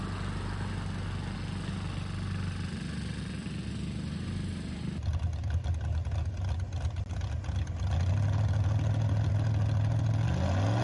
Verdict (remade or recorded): recorded